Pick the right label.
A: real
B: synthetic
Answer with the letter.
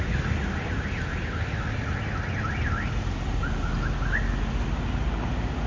A